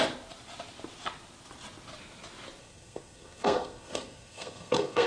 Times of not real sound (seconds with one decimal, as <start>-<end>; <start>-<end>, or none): 2.6-5.1